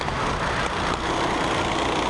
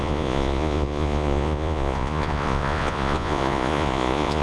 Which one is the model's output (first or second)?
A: second